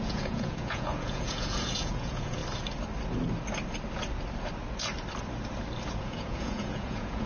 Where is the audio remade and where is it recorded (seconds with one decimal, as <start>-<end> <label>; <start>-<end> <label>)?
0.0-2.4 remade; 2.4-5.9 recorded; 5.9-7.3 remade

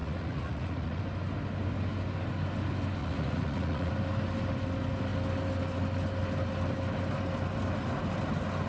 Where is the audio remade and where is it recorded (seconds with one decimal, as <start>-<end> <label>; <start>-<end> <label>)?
0.0-1.0 remade; 1.0-3.0 recorded; 3.0-3.9 remade; 3.9-8.7 recorded

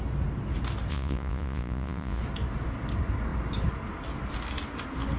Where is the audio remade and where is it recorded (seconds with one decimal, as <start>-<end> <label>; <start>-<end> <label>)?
0.0-0.9 recorded; 0.9-2.2 remade; 2.2-5.2 recorded